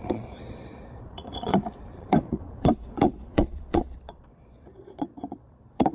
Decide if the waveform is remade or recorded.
remade